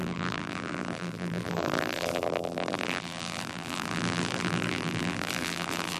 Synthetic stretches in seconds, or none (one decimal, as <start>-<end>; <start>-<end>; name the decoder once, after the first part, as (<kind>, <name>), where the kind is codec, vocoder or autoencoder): 0.0-6.0 (vocoder, BigVGAN v2)